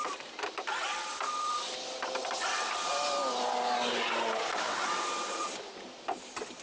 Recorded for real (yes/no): no